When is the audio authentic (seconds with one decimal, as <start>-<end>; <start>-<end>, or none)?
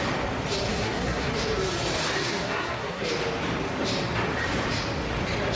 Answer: 0.0-0.7; 1.3-2.2; 3.1-5.6